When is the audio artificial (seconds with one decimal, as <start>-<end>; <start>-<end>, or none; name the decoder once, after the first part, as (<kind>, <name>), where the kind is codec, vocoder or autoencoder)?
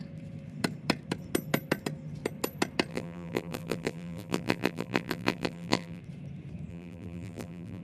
2.9-6.0 (vocoder, BigVGAN v2); 6.7-7.8